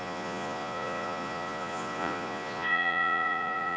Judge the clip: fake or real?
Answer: fake